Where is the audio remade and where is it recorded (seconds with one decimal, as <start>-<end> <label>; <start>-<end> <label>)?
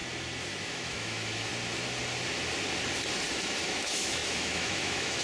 0.0-0.6 recorded; 0.6-1.5 remade; 1.5-3.3 recorded; 3.3-5.2 remade